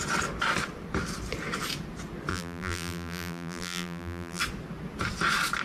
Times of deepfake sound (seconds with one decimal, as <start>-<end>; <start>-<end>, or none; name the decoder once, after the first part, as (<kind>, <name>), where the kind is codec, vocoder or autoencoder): 2.3-4.4 (vocoder, BigVGAN v2)